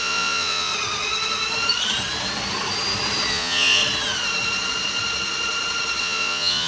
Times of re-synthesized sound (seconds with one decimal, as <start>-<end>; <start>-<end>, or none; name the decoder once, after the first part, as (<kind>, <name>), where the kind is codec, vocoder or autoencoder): 0.0-0.7 (vocoder, Vocos); 3.3-3.8; 6.0-6.7